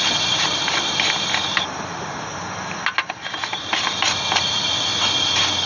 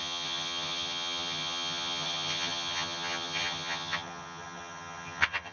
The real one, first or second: first